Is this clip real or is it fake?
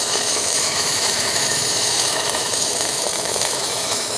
fake